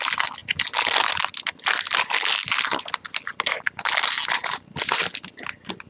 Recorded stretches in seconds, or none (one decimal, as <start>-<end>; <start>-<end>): 0.0-5.9